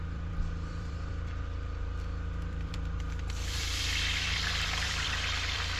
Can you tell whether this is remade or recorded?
remade